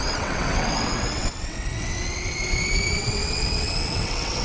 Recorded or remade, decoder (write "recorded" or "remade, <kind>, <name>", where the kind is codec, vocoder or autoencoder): remade, vocoder, WaveNeXt